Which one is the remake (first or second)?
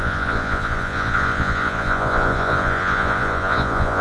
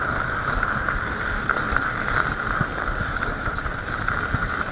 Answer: first